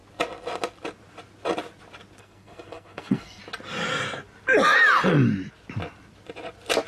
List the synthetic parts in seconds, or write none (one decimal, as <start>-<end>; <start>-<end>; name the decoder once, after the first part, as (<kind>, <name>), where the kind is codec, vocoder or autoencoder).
2.2-3.4 (codec, SNAC)